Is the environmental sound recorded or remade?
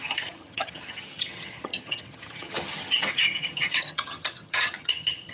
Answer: remade